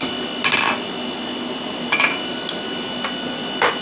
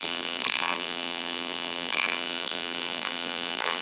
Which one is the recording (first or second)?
first